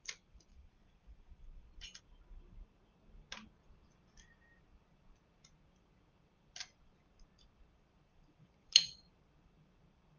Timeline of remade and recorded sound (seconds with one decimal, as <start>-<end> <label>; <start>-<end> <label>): 0.0-0.5 recorded; 0.5-2.0 remade; 2.0-8.1 recorded; 8.1-9.0 remade; 9.0-10.2 recorded